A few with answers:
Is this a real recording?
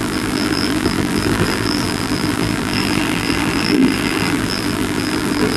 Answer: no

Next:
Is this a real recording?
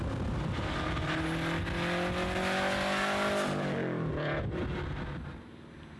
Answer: yes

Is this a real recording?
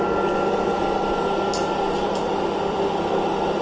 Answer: yes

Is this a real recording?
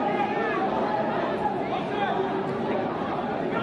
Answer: yes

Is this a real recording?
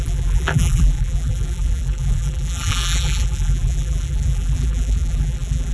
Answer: no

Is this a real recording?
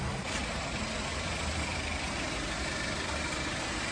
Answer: no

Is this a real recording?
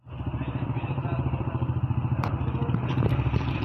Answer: no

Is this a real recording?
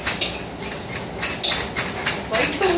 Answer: yes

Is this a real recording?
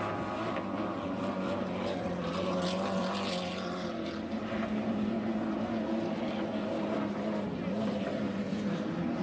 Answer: yes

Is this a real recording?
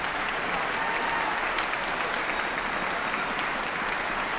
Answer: yes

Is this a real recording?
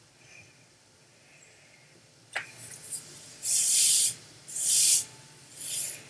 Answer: no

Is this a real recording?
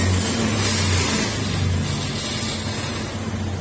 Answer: yes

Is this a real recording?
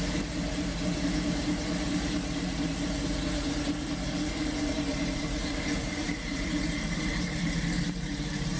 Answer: no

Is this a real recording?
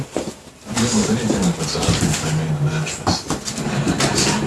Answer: yes